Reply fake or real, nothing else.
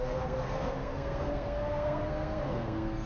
fake